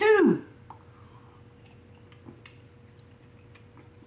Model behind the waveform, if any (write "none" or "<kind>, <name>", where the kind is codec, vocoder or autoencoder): none